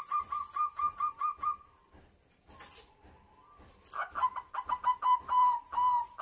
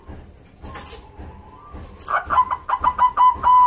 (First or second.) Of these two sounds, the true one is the second